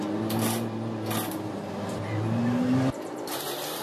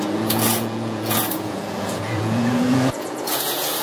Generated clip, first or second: second